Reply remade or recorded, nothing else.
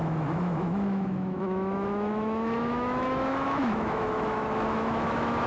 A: remade